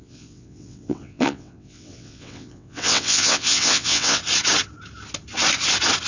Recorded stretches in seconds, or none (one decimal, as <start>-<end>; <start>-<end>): 4.2-6.1